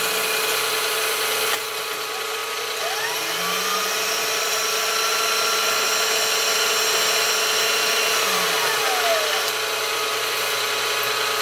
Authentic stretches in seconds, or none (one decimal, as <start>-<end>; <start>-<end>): 0.0-11.4